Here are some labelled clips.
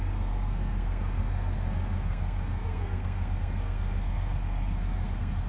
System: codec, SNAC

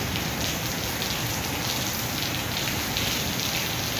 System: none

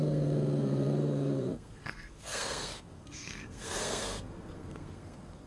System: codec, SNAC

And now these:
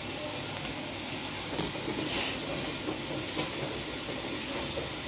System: none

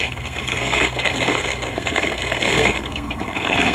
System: codec, SNAC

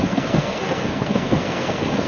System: codec, SNAC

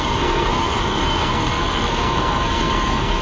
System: codec, SNAC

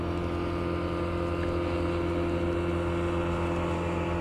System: none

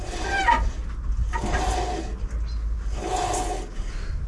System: none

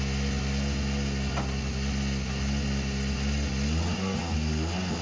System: none